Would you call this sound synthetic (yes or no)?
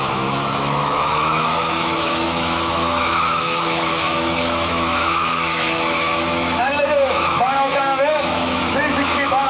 yes